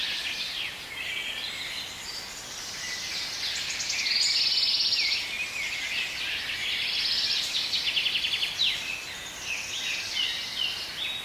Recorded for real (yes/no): yes